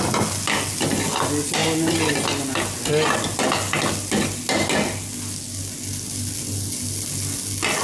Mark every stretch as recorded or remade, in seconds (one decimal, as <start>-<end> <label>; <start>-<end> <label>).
0.0-7.8 recorded